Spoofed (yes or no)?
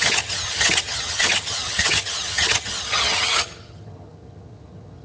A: yes